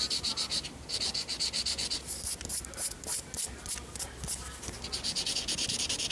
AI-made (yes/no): no